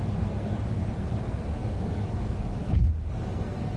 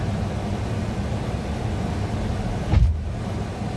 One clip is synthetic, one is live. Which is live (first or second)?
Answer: second